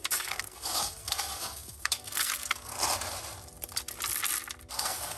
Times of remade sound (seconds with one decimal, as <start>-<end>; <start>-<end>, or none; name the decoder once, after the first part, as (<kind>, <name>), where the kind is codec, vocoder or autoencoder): 0.0-2.7 (codec, SNAC); 4.7-5.2